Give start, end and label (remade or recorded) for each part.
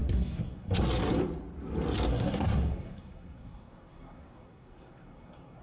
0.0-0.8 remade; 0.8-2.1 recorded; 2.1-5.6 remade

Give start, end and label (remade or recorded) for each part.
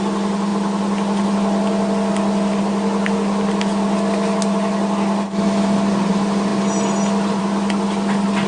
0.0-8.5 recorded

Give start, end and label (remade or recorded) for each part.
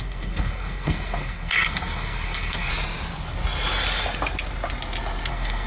0.0-2.7 remade; 2.7-5.3 recorded; 5.3-5.7 remade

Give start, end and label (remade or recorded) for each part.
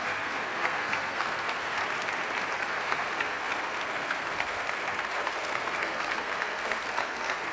0.0-1.8 remade; 1.8-2.6 recorded; 2.6-7.5 remade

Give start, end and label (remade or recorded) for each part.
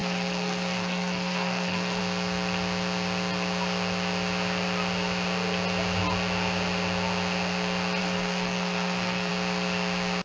0.0-2.0 remade; 2.0-8.0 recorded; 8.0-9.3 remade; 9.3-10.2 recorded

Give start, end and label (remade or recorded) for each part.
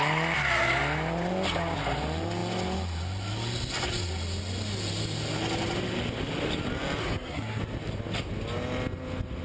0.0-7.0 recorded; 7.0-7.6 remade; 7.6-9.4 recorded